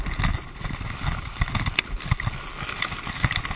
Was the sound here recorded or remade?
recorded